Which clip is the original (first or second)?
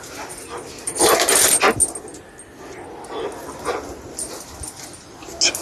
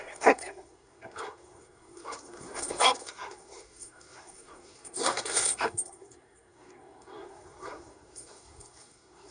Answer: first